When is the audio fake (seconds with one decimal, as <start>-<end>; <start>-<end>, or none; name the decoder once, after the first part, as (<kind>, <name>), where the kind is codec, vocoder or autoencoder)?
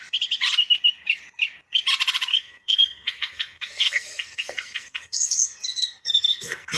2.3-6.8 (codec, SNAC)